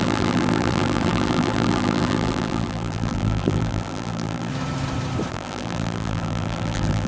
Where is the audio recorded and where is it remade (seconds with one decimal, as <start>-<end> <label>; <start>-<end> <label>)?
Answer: 0.0-4.5 remade; 4.5-5.3 recorded; 5.3-7.1 remade